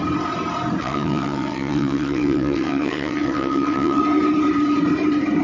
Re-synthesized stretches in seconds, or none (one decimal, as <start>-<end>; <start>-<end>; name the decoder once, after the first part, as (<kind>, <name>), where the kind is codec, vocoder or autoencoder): 0.8-4.0 (vocoder, WaveNeXt)